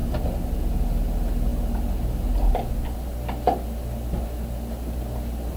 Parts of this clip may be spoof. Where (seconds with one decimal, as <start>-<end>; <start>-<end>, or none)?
none